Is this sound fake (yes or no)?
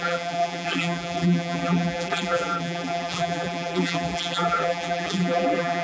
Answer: yes